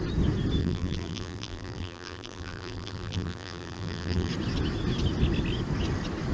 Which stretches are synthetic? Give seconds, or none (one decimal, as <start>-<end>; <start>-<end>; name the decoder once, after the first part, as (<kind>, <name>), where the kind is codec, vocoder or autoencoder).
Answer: 0.6-4.3 (vocoder, BigVGAN v2)